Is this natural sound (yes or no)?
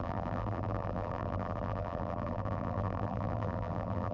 no